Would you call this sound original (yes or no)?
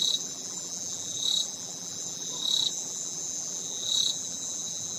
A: no